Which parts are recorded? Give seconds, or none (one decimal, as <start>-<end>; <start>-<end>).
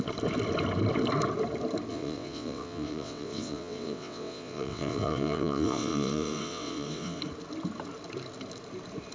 0.0-1.9; 7.2-9.1